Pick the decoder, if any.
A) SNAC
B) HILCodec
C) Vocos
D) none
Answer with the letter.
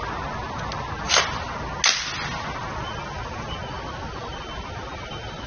D